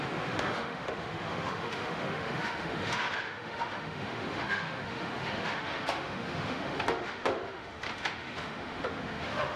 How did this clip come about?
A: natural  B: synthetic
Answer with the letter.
B